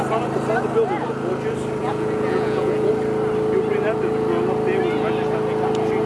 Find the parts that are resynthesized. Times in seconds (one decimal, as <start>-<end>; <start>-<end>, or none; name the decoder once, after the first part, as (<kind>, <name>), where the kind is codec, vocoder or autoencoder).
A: 1.8-2.9 (vocoder, Vocos)